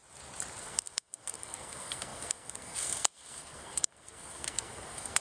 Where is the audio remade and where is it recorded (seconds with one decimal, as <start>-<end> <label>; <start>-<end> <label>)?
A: 0.0-0.6 recorded; 0.6-5.2 remade